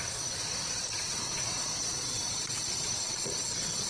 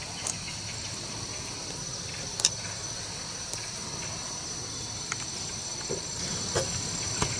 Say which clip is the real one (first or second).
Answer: second